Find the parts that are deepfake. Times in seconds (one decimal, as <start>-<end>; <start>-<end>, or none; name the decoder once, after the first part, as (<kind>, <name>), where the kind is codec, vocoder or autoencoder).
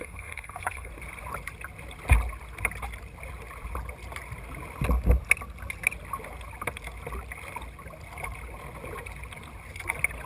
0.0-0.9 (codec, SNAC)